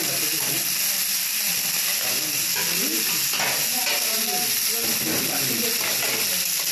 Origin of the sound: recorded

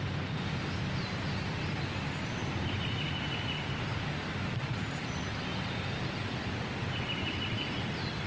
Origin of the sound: recorded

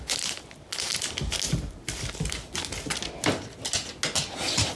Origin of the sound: recorded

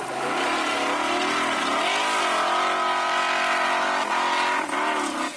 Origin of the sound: recorded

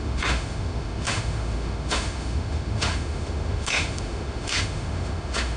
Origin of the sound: remade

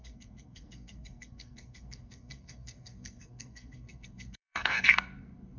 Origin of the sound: remade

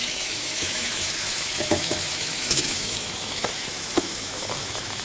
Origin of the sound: remade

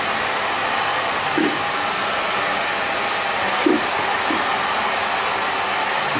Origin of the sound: recorded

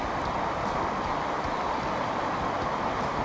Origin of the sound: recorded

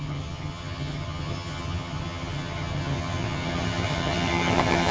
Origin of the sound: remade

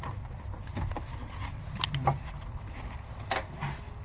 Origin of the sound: recorded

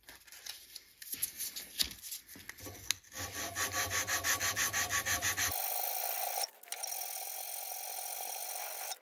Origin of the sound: recorded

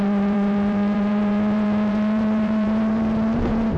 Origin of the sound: remade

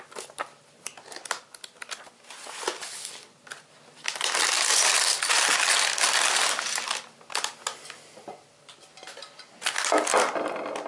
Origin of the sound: recorded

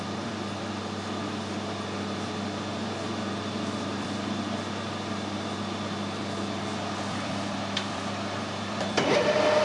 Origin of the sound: remade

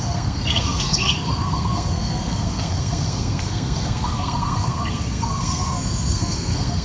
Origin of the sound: remade